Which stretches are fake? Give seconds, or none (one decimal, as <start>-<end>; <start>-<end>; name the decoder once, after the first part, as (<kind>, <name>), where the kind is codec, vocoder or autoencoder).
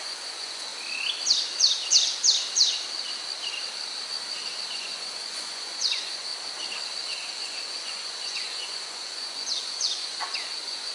0.0-0.7 (vocoder, Vocos); 4.7-6.3; 7.0-10.9